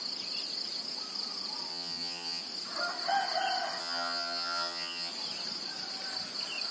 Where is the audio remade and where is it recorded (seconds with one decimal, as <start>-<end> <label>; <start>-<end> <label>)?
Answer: 0.0-1.7 recorded; 1.7-2.4 remade; 2.4-3.8 recorded; 3.8-5.1 remade; 5.1-6.7 recorded